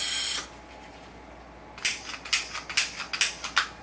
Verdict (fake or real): real